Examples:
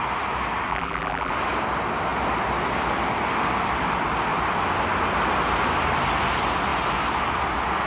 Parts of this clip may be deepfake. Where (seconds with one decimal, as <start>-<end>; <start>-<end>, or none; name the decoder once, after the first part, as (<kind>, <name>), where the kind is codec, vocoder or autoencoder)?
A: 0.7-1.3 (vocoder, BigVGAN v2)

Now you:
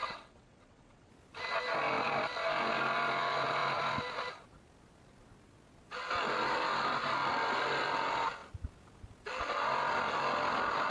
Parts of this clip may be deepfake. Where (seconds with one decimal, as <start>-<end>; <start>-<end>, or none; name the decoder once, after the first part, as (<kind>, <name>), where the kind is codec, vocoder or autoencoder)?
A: 0.0-1.1 (vocoder, WaveNeXt)

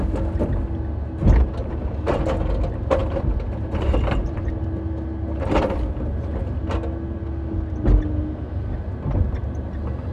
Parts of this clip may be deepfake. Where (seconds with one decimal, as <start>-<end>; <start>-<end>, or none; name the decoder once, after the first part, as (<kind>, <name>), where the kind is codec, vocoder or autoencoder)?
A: 3.0-4.6 (vocoder, BigVGAN v2)

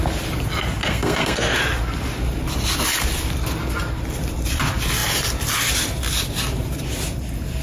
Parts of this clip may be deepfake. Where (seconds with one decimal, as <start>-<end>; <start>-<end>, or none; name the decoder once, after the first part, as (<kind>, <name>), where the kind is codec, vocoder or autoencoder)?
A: 0.8-1.6 (codec, SNAC)

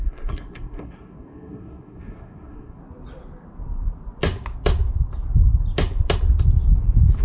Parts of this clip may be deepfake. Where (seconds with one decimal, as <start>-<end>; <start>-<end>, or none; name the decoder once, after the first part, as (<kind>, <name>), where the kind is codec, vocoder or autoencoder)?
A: 0.0-2.8 (codec, SNAC)

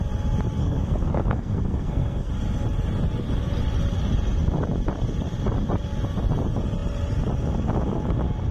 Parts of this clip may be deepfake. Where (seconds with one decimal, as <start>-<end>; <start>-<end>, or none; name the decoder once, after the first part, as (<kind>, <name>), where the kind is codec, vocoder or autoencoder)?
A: 0.6-2.3 (codec, SNAC)

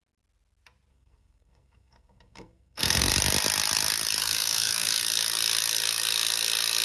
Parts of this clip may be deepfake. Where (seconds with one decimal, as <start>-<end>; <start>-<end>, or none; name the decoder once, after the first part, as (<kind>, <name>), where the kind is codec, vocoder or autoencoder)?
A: 0.9-3.1 (codec, SNAC); 4.2-5.0

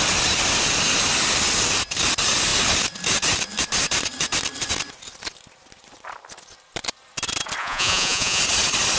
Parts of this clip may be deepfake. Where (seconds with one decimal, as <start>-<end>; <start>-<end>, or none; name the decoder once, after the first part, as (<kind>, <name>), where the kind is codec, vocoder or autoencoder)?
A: 7.6-8.4 (vocoder, Vocos)